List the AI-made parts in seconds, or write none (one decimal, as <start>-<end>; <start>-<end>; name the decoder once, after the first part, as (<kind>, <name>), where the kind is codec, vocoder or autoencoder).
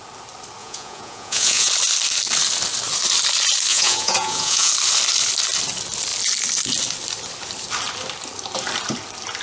0.6-1.7 (vocoder, Vocos); 3.7-4.7